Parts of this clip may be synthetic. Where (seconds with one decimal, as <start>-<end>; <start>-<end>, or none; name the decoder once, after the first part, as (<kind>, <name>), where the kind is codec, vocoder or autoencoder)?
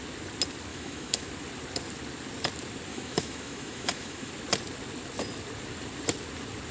0.7-1.3 (autoencoder, DAC-VAE); 2.9-4.3